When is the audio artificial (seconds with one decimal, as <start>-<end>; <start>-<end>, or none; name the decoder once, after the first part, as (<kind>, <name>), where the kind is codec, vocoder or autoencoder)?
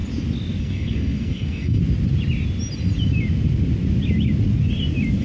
0.6-1.8 (codec, SNAC)